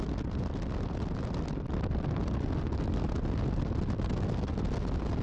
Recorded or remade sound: recorded